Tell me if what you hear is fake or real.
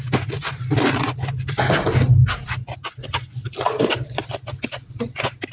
real